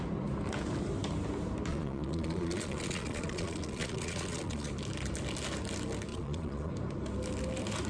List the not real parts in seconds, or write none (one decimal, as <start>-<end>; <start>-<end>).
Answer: 1.7-4.7; 6.1-6.7